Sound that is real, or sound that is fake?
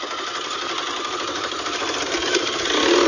real